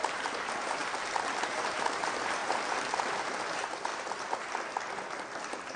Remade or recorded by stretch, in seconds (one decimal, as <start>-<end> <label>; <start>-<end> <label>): 0.0-0.8 remade; 0.8-1.5 recorded; 1.5-3.9 remade; 3.9-5.8 recorded